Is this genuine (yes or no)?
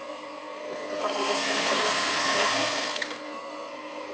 no